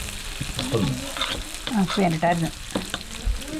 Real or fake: real